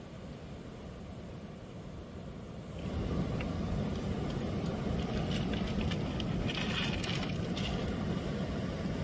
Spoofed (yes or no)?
no